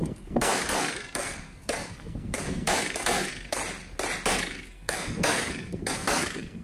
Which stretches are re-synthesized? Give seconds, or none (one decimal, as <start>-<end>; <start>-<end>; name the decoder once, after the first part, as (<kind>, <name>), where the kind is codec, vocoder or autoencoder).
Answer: 0.0-3.6 (codec, SNAC); 4.3-6.6